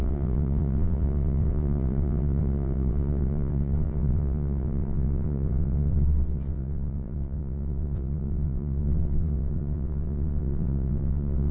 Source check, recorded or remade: remade